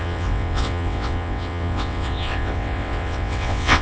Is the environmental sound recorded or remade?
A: remade